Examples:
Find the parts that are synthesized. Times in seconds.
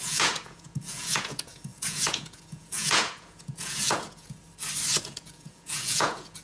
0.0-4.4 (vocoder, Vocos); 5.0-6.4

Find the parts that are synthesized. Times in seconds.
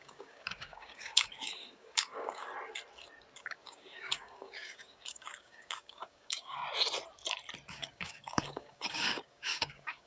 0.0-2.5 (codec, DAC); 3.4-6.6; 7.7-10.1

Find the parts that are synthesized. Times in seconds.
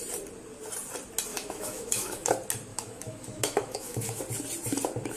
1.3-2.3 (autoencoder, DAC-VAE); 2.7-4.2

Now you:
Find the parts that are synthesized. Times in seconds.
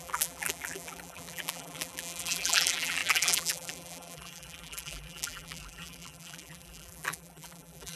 0.0-8.0 (vocoder, BigVGAN v2)